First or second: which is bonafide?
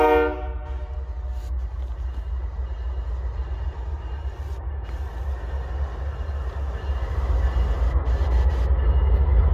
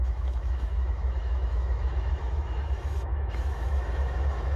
first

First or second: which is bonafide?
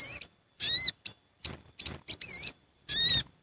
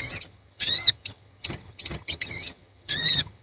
first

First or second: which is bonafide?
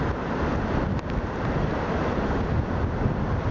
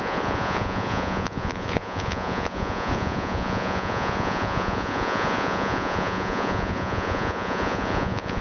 first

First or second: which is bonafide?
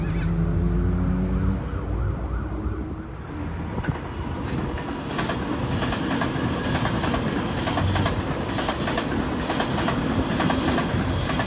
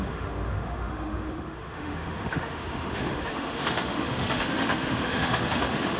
first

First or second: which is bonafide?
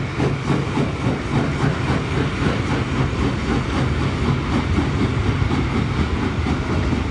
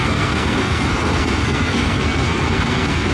first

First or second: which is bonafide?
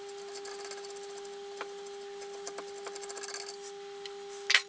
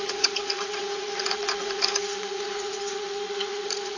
first